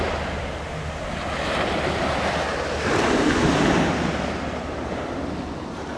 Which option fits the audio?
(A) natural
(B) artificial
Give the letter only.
A